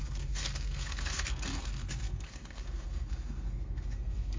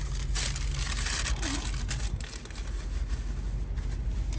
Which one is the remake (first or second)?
first